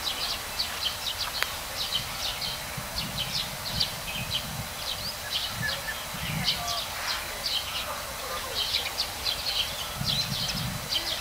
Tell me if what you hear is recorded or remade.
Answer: recorded